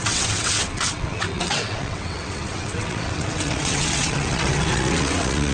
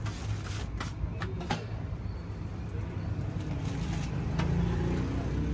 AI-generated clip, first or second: first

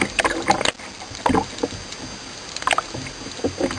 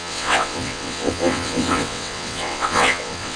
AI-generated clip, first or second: second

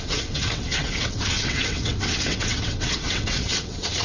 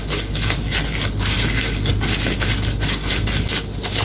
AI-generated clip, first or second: first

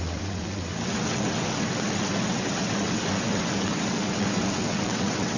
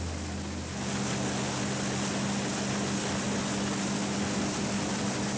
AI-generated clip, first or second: first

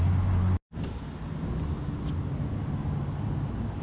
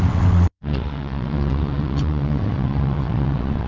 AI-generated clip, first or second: second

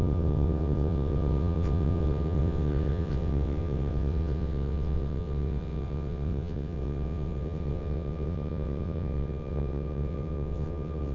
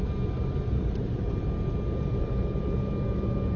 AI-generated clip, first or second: first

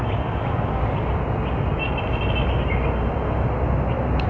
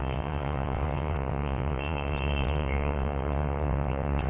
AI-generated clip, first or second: second